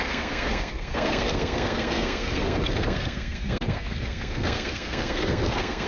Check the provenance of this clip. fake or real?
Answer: fake